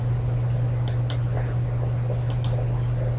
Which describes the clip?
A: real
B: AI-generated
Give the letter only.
A